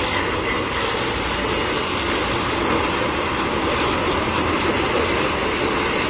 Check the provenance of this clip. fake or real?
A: real